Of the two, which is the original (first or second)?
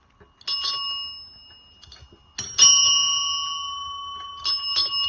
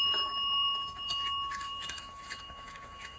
first